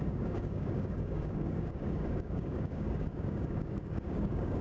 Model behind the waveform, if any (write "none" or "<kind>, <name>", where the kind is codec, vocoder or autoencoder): codec, DAC